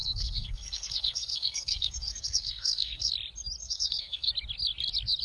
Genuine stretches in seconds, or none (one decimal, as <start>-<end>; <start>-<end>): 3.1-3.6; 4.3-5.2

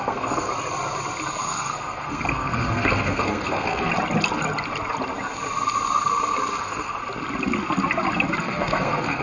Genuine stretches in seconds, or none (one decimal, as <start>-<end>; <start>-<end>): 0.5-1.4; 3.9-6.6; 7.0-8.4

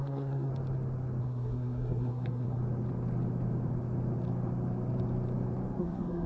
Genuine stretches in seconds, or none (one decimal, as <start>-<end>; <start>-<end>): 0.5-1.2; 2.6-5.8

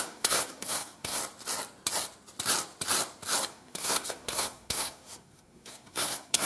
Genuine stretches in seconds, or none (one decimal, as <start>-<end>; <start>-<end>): 1.2-3.5

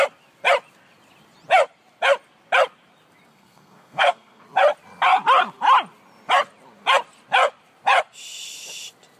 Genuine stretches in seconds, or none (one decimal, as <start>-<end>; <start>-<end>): 0.0-3.3; 4.4-9.2

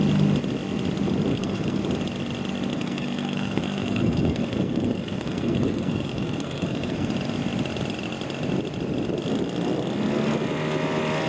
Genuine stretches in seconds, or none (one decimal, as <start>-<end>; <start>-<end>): 0.0-1.3; 1.8-2.7; 7.1-11.3